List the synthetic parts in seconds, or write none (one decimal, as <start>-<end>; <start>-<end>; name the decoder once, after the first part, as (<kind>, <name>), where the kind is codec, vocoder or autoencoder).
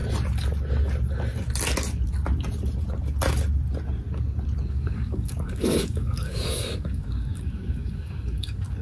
4.7-8.8 (codec, DAC)